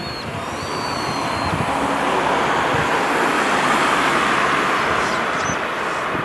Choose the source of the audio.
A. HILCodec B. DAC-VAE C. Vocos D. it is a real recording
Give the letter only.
D